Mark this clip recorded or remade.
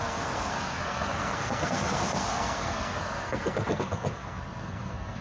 remade